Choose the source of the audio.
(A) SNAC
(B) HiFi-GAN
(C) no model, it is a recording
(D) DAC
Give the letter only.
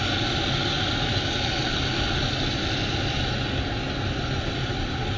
C